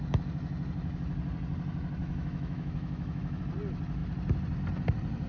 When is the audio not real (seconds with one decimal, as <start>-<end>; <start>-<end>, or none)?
2.0-3.4